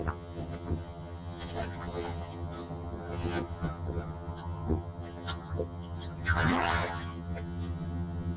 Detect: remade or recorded remade